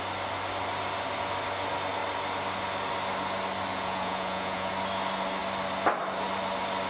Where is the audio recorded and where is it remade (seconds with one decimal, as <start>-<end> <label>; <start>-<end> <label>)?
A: 0.0-3.7 recorded; 3.7-4.7 remade; 4.7-6.9 recorded